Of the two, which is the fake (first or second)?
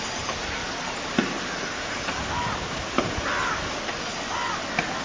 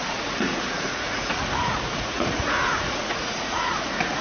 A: second